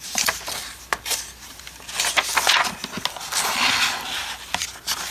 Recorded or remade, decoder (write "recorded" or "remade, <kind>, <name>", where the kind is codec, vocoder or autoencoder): recorded